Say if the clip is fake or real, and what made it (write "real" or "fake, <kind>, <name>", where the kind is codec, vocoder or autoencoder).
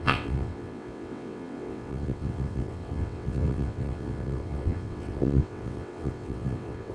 fake, vocoder, WaveNeXt